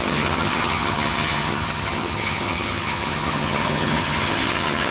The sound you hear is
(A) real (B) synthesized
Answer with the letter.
B